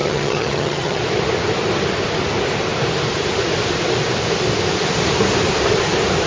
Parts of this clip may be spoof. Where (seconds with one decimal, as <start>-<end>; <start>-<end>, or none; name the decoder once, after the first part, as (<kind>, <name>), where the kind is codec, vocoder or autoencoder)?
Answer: 0.0-1.0 (vocoder, HiFi-GAN)

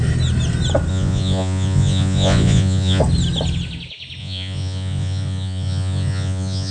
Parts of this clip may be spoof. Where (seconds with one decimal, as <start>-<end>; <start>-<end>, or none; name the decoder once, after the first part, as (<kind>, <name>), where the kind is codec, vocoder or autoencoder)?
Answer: 0.9-3.0 (vocoder, Vocos); 4.2-6.7

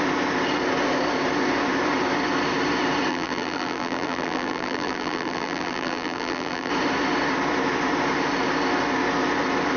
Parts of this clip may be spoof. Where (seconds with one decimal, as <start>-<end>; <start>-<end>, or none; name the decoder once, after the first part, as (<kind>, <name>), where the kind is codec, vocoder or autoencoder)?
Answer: 3.1-6.7 (vocoder, BigVGAN v2)

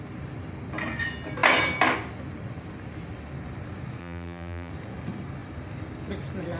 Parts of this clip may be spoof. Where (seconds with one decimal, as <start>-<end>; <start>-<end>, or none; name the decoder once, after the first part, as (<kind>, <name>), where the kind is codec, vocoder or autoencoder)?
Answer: 4.0-4.7 (vocoder, BigVGAN v2)

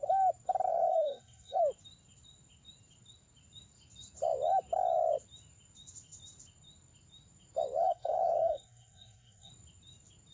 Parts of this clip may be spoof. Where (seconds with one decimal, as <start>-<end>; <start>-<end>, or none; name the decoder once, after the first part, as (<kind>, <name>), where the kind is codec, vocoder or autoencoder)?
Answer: 0.7-1.6 (codec, SNAC); 7.8-9.5